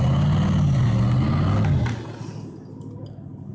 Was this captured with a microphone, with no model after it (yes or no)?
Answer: yes